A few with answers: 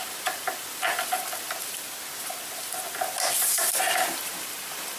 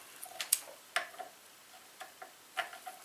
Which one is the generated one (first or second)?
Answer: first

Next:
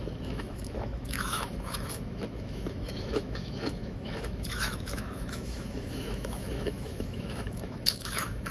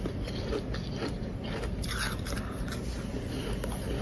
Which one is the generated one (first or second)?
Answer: first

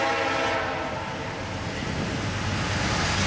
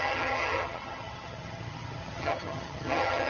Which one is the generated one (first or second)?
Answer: second